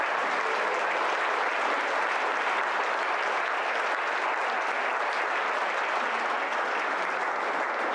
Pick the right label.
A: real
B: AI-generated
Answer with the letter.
A